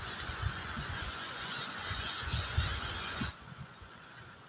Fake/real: fake